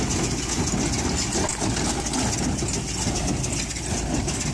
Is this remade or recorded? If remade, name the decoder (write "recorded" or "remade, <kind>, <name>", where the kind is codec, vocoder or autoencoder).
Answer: recorded